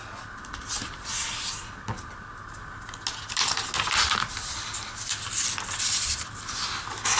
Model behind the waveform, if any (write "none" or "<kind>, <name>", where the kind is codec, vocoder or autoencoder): none